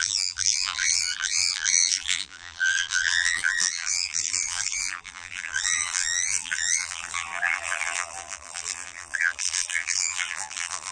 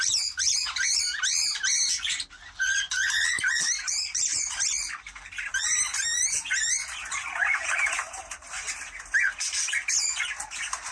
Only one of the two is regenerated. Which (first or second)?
first